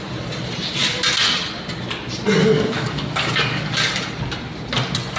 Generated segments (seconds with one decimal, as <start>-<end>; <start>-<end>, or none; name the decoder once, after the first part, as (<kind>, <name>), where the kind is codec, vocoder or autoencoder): 2.4-3.9 (codec, DAC)